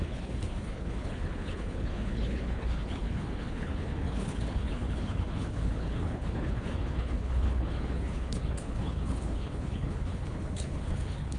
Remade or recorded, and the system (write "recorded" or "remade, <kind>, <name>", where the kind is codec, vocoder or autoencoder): remade, codec, HILCodec